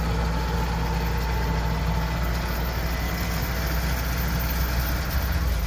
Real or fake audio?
real